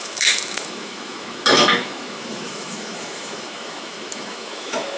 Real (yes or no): no